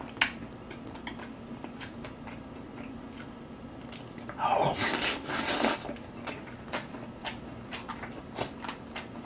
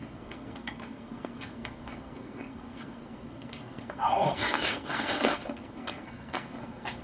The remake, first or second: second